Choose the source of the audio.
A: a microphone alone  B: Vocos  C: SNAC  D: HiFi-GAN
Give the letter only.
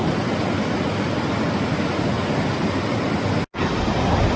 A